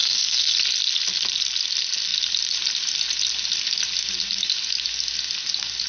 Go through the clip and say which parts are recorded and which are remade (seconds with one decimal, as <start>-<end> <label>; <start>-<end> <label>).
0.0-0.5 remade; 0.5-5.9 recorded